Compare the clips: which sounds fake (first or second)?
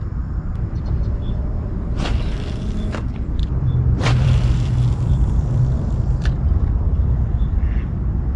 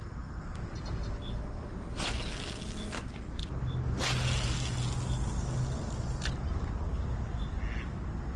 first